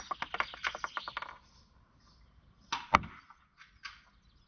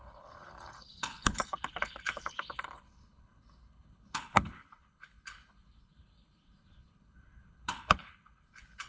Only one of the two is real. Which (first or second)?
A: first